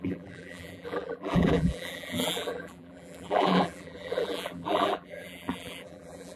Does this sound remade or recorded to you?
remade